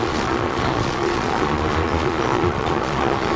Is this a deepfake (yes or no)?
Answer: yes